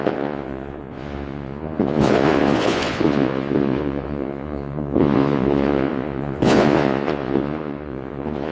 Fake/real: fake